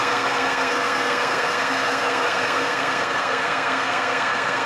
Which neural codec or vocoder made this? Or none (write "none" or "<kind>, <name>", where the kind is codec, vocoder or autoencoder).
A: codec, SNAC